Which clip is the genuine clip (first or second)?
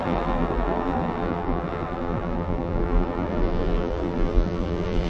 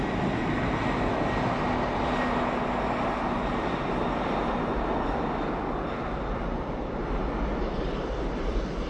second